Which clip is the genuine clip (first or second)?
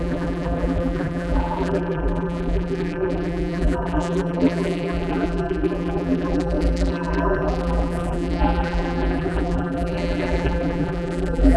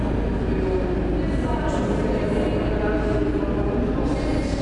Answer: second